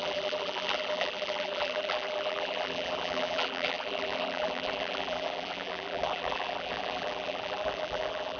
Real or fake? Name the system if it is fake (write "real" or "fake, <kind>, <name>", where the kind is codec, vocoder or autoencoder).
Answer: fake, vocoder, BigVGAN v2